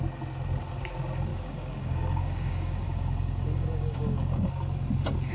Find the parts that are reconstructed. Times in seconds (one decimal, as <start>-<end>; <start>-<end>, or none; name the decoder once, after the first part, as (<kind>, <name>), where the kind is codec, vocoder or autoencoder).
1.3-4.5 (codec, DAC)